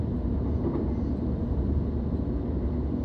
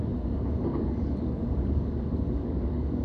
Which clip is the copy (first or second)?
second